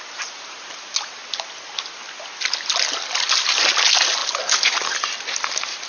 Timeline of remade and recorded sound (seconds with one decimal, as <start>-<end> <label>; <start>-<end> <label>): 0.0-5.9 recorded